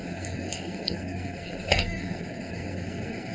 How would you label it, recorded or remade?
remade